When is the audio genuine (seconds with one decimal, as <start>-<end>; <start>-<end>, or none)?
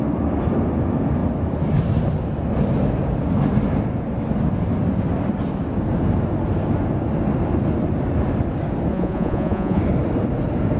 0.0-8.9; 9.8-10.8